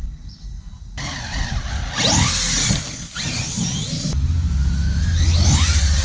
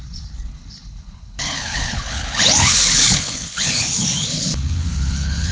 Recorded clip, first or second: first